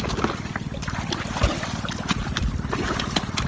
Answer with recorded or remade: recorded